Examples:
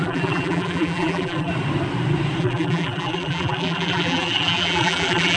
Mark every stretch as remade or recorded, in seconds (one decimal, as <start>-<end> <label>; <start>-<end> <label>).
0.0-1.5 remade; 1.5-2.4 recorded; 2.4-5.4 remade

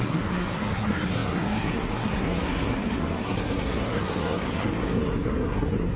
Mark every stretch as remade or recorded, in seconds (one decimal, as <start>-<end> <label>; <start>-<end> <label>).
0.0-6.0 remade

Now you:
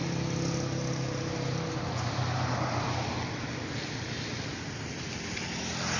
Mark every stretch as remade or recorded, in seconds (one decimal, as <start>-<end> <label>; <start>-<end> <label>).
0.0-6.0 recorded

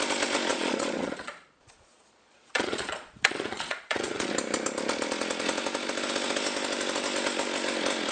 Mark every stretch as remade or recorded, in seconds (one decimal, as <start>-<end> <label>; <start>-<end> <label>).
0.0-0.5 recorded; 0.5-4.3 remade; 4.3-8.1 recorded

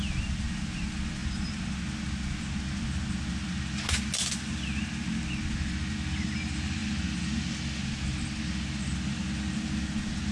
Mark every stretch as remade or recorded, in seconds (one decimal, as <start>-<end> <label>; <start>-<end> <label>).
0.0-10.3 recorded

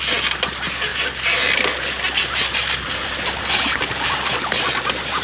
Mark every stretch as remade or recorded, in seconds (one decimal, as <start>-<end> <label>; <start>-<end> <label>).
0.0-5.2 recorded

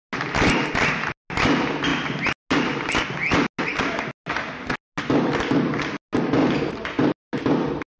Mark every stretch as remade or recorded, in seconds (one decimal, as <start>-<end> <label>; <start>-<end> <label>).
0.0-6.4 recorded; 6.4-7.1 remade; 7.1-8.0 recorded